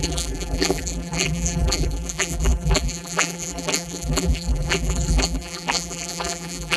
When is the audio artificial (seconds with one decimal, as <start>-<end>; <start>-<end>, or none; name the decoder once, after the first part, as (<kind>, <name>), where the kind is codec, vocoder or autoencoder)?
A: 0.0-6.8 (vocoder, BigVGAN v2)